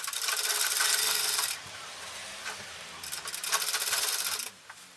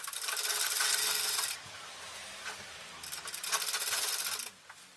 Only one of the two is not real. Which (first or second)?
first